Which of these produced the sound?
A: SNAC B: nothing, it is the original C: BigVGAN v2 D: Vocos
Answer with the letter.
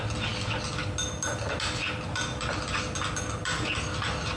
B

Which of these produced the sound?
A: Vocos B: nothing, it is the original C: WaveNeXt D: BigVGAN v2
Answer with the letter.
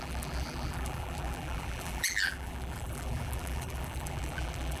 D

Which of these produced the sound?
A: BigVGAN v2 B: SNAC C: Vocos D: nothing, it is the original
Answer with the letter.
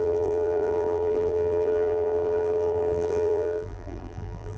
A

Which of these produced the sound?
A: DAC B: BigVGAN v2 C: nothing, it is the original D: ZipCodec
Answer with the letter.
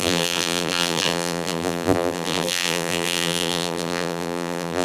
B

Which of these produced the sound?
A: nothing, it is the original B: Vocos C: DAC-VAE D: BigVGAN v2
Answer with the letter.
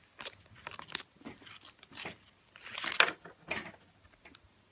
A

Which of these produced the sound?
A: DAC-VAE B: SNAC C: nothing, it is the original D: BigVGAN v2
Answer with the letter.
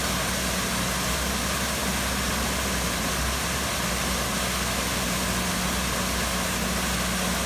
C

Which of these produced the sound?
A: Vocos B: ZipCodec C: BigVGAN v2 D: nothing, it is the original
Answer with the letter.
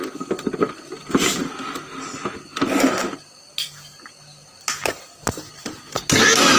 D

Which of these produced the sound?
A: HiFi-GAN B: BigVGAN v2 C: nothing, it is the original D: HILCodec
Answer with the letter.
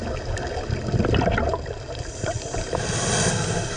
C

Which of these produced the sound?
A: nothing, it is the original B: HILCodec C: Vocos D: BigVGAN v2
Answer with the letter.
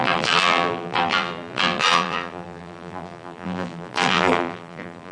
D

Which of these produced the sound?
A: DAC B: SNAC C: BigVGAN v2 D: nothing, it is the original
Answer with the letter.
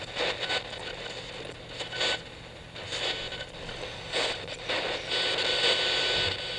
D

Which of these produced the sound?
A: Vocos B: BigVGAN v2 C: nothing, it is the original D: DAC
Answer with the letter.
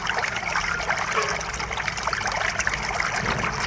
C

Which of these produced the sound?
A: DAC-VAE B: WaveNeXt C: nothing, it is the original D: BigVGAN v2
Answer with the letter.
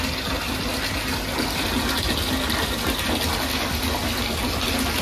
C